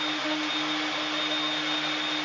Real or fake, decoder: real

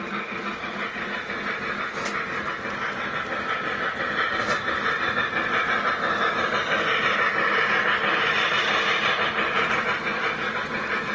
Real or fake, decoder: real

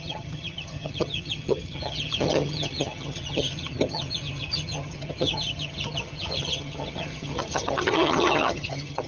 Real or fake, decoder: fake, vocoder, HiFi-GAN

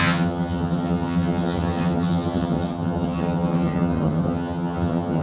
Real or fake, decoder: fake, vocoder, HiFi-GAN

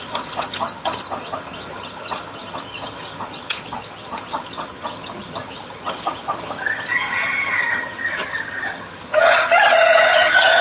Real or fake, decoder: fake, vocoder, HiFi-GAN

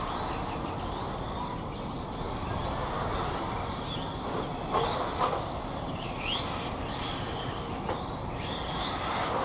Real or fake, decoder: real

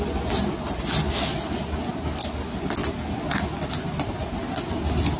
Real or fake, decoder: real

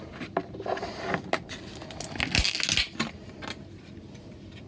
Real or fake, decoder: real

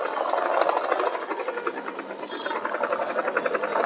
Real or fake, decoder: real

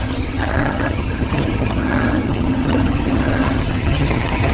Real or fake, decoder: fake, vocoder, HiFi-GAN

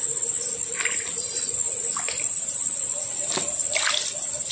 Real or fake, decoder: real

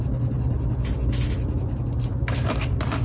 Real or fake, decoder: real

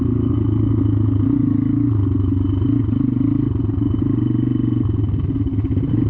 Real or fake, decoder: real